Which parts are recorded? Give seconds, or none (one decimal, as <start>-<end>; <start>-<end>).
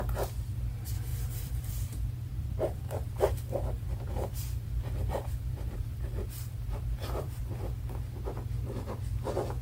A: 0.0-1.1; 1.7-2.3; 7.4-9.6